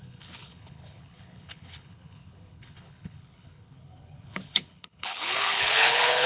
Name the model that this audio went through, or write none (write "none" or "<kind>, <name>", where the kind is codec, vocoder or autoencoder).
codec, HILCodec